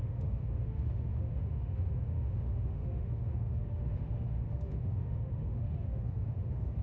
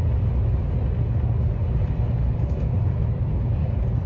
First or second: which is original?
second